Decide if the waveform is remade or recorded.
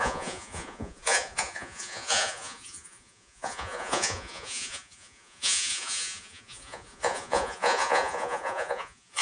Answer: remade